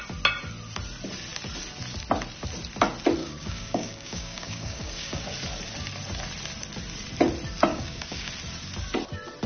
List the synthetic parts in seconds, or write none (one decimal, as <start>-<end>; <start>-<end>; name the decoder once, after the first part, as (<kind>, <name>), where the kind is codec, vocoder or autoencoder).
3.2-5.2 (codec, DAC); 7.7-8.3